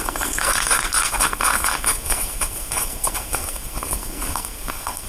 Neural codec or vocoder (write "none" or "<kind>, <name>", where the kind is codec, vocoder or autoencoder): codec, SNAC